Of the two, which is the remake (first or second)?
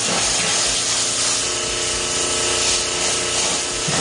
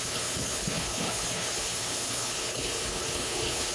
second